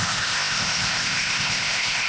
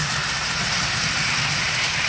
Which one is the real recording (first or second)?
second